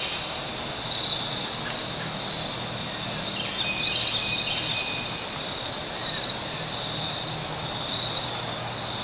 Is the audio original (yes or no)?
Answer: yes